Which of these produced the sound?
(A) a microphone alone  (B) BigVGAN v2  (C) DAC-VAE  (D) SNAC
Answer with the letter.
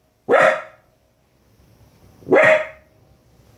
A